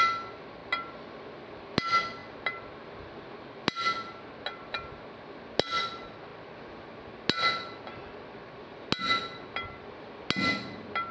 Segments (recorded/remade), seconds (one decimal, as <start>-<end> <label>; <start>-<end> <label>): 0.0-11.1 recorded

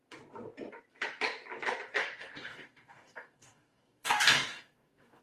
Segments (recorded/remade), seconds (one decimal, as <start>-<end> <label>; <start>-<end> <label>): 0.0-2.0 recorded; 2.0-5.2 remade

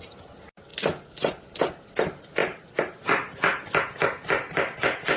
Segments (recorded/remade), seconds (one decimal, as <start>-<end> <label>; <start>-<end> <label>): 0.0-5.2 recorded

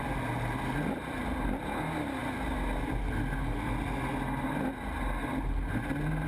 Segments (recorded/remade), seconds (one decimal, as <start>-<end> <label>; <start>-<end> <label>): 0.0-6.3 recorded